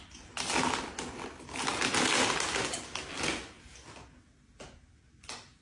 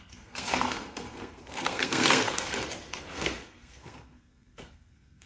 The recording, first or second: first